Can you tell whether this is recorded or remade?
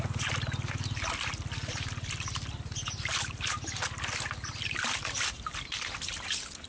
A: recorded